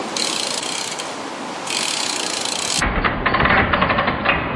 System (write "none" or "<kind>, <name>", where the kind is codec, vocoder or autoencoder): none